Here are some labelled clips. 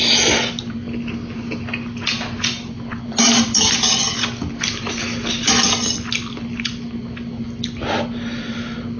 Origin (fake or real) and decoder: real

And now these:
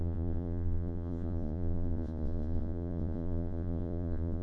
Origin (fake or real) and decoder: fake, vocoder, Vocos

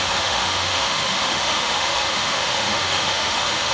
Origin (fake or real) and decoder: fake, autoencoder, DAC-VAE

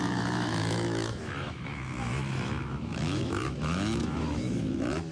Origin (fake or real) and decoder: fake, autoencoder, DAC-VAE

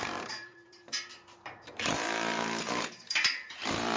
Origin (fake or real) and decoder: fake, vocoder, BigVGAN v2